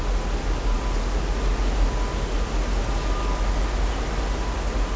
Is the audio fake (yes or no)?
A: no